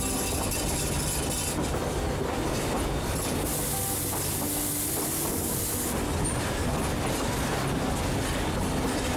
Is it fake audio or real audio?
real